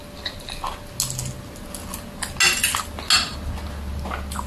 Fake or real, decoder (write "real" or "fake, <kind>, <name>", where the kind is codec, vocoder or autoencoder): real